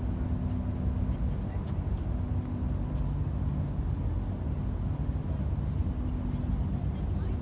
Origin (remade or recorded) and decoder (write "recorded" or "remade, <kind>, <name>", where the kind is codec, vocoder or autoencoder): recorded